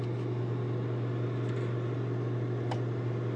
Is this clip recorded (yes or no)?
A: yes